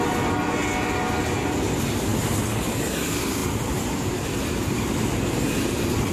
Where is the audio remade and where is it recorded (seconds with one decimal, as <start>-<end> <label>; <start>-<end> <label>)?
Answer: 0.0-6.1 recorded